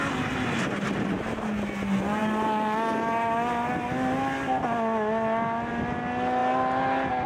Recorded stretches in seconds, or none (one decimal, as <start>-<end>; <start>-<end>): 0.0-7.3